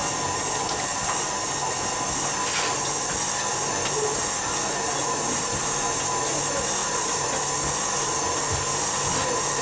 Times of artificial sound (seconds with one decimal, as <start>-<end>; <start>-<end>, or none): 5.0-5.6; 6.8-7.4